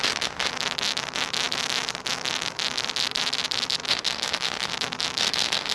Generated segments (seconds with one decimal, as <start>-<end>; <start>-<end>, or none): 0.0-0.5; 3.9-4.7; 5.2-5.7

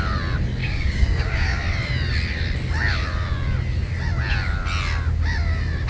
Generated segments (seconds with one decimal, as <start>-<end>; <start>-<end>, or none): 0.6-1.6

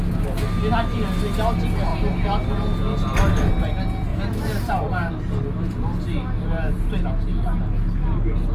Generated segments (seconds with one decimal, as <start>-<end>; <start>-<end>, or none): none

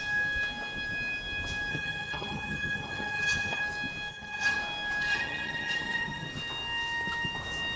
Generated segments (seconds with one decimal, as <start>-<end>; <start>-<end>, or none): 1.7-3.6; 4.1-4.6; 5.1-6.3

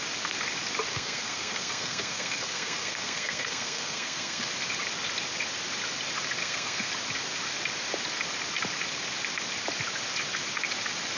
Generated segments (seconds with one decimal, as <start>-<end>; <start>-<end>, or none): 0.9-4.5; 6.4-6.9

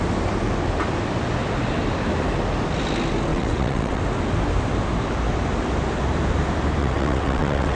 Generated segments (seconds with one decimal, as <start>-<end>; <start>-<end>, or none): 3.3-4.0; 6.8-7.8

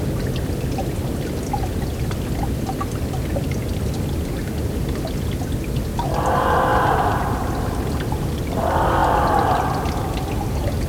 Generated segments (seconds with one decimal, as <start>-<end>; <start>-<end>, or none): none